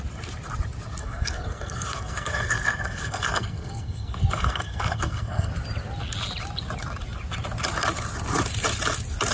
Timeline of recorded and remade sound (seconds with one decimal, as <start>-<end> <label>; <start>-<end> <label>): 0.0-1.0 recorded; 1.0-5.5 remade; 5.5-9.3 recorded